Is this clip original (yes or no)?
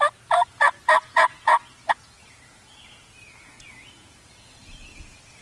no